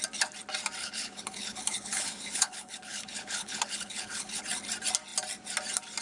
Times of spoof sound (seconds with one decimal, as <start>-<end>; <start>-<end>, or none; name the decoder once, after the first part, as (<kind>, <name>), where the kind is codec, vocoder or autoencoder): 0.8-4.4 (codec, HILCodec)